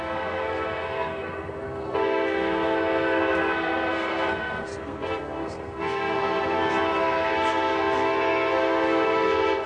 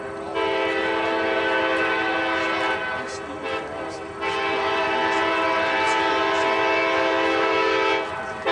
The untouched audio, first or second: second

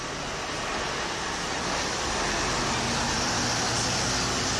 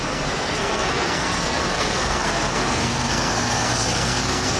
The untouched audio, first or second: first